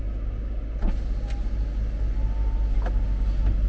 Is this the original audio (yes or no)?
yes